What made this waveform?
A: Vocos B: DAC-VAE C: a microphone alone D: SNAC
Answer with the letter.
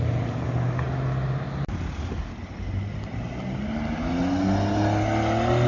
C